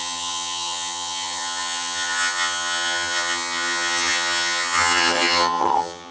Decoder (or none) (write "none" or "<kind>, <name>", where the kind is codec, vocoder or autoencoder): vocoder, HiFi-GAN